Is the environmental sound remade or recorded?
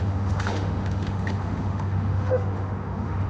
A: remade